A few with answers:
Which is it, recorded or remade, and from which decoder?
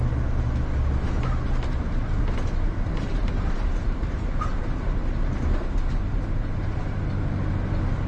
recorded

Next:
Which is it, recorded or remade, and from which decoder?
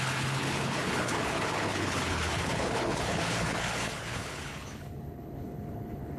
remade, codec, HILCodec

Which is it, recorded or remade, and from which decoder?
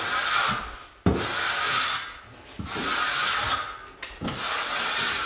recorded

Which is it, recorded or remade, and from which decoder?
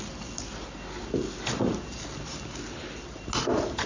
recorded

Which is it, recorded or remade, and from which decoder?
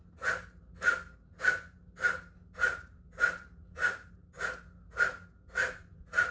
recorded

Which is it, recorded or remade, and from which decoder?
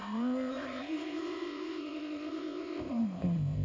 remade, codec, ZipCodec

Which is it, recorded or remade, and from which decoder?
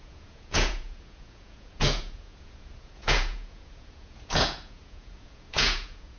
remade, vocoder, Vocos